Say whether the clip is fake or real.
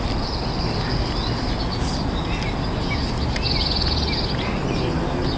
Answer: real